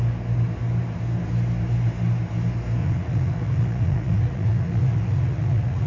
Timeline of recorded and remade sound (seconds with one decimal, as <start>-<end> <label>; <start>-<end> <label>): 0.0-2.8 recorded; 2.8-5.9 remade